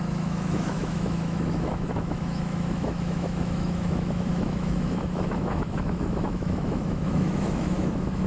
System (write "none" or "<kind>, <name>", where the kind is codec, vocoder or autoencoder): autoencoder, DAC-VAE